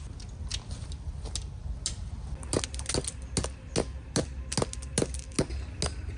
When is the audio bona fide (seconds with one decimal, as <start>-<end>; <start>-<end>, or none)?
0.0-6.2